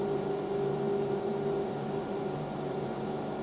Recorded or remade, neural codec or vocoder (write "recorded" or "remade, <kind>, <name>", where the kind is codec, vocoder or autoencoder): recorded